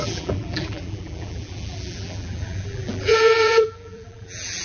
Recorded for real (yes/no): no